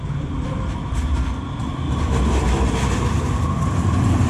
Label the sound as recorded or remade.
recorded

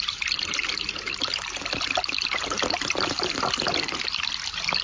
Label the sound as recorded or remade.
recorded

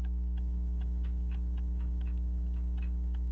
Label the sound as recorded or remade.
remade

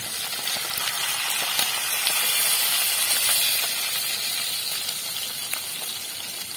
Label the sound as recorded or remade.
recorded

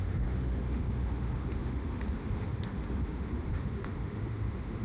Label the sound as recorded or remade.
remade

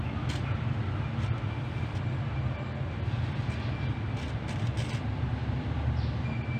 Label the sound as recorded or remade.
recorded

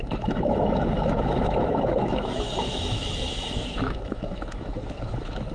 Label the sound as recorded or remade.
remade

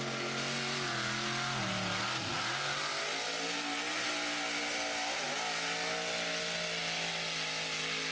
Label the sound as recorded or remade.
recorded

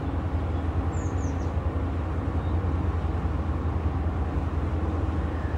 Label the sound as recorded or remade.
recorded